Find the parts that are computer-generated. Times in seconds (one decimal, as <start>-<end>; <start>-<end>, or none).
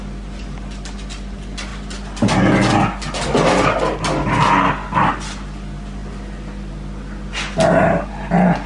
none